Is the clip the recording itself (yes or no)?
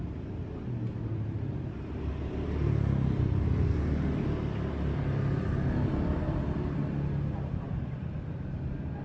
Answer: yes